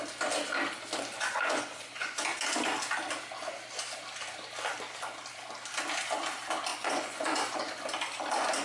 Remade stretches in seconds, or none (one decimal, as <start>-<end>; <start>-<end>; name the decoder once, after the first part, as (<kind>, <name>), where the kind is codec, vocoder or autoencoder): 1.1-2.2 (vocoder, Vocos); 6.7-7.6